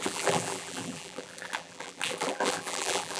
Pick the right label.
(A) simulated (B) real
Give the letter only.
A